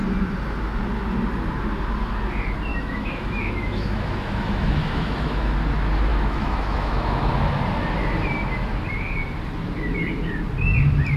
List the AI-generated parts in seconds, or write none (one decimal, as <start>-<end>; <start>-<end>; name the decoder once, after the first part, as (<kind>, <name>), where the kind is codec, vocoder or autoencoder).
2.7-5.5 (autoencoder, DAC-VAE); 6.1-7.3